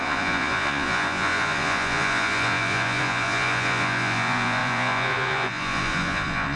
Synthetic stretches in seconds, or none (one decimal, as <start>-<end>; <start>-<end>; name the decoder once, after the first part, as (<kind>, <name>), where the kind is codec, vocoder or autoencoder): 0.0-6.6 (vocoder, Vocos)

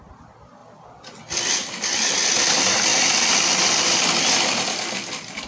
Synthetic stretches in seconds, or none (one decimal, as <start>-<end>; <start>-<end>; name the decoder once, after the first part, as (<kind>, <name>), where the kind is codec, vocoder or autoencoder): none

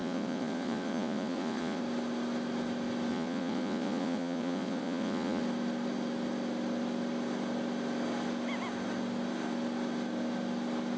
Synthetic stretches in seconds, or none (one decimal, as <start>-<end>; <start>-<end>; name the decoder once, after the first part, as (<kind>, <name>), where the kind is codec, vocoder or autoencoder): 0.0-1.8 (vocoder, Vocos); 3.1-5.4